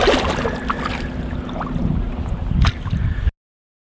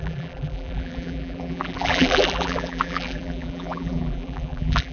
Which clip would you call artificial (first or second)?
second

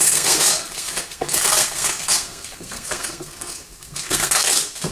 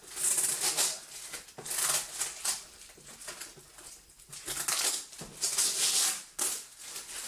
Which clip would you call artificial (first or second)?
first